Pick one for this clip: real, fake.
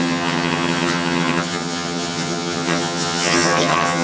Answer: fake